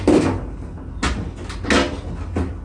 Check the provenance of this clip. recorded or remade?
recorded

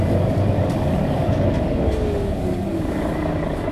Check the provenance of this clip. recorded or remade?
remade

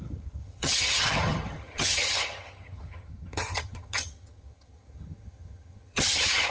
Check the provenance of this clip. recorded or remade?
remade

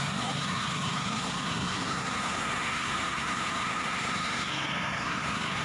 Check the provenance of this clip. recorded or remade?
remade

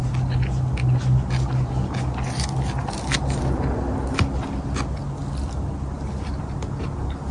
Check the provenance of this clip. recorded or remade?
recorded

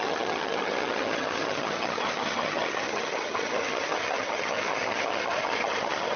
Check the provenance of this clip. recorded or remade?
remade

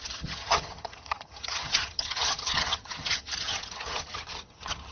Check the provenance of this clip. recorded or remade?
remade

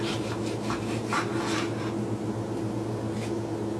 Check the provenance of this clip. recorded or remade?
recorded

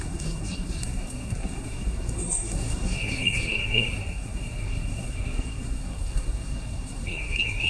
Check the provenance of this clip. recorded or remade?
remade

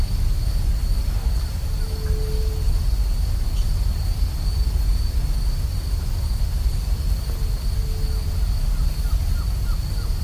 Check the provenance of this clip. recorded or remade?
recorded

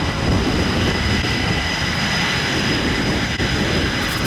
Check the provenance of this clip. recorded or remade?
recorded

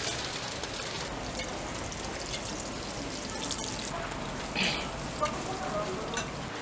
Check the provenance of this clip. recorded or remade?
recorded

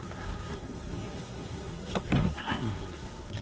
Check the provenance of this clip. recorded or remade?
remade